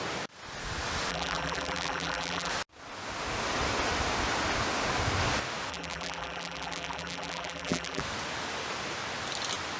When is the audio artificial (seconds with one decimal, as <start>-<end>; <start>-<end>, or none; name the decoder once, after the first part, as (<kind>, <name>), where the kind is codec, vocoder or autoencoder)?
1.1-2.5 (vocoder, BigVGAN v2); 5.7-8.0